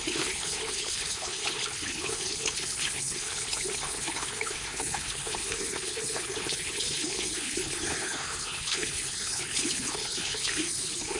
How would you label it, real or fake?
fake